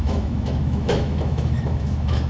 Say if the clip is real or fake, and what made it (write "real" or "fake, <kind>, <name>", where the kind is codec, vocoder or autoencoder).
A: fake, autoencoder, DAC-VAE